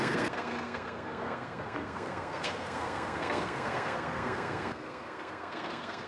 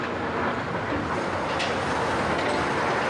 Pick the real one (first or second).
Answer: second